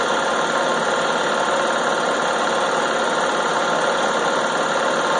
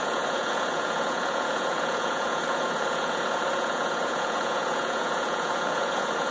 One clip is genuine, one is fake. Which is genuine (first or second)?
first